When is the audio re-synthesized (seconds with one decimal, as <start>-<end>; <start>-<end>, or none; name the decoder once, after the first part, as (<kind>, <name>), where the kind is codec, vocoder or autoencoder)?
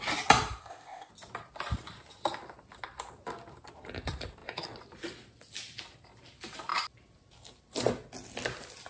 0.6-1.1 (codec, ZipCodec)